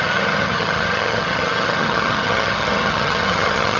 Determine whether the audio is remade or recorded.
remade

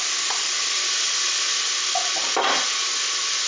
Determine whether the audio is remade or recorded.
recorded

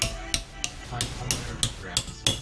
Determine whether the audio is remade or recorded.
recorded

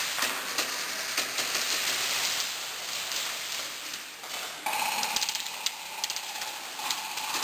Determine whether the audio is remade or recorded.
recorded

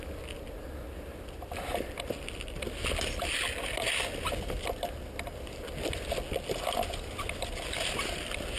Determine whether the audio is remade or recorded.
recorded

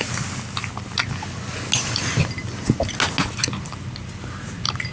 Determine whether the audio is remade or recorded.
recorded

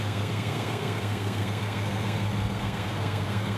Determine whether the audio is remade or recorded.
remade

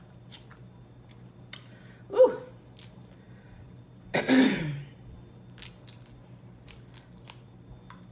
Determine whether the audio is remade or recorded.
recorded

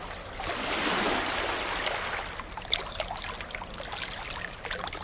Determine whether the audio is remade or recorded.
recorded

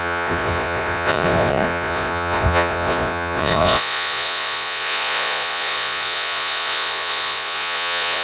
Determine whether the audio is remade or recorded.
remade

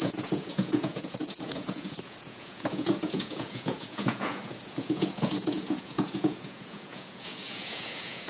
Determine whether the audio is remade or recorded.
remade